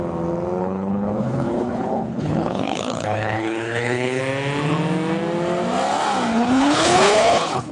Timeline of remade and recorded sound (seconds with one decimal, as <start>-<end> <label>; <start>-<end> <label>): 0.0-0.6 recorded; 0.6-4.2 remade; 4.2-6.3 recorded; 6.3-7.7 remade

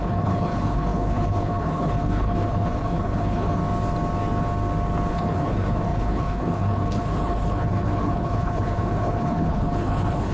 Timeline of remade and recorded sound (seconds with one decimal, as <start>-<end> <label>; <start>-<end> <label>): 0.0-3.6 remade; 3.6-5.1 recorded; 5.1-10.3 remade

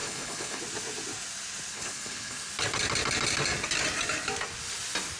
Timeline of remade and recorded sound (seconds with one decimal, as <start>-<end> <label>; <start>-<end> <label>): 0.0-0.6 remade; 0.6-1.7 recorded; 1.7-2.5 remade; 2.5-5.2 recorded

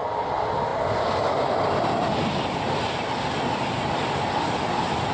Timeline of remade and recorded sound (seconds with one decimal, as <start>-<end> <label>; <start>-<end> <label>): 0.0-5.1 recorded